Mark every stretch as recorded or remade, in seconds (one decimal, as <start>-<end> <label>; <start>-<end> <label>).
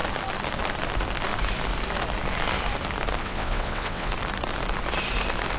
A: 0.0-3.2 recorded; 3.2-4.1 remade; 4.1-5.6 recorded